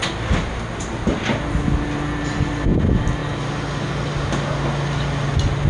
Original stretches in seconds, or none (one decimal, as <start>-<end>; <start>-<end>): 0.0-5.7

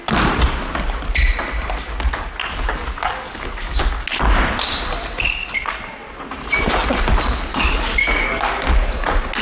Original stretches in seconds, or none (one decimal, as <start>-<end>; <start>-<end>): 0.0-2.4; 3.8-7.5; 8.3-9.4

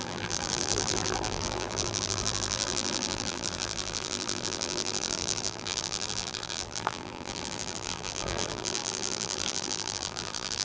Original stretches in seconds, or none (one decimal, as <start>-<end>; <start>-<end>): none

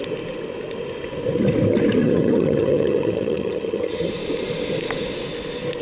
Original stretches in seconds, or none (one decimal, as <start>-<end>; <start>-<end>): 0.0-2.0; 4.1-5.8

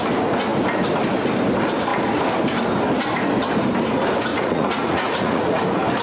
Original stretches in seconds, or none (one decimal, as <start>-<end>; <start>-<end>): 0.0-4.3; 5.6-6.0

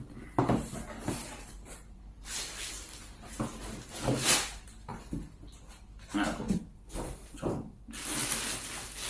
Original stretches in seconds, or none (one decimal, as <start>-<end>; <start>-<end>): 0.0-9.1

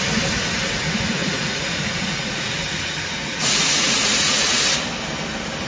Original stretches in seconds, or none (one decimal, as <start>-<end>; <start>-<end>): 0.0-1.2; 4.6-5.7